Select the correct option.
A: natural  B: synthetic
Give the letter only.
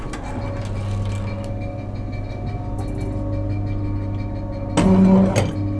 A